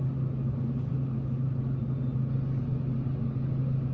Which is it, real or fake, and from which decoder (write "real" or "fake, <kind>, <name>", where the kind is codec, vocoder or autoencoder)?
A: real